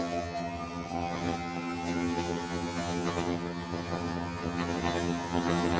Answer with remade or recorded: remade